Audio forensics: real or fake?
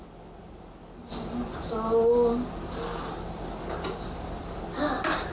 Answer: real